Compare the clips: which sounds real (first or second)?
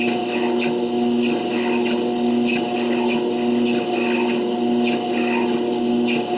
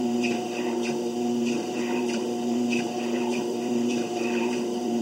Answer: first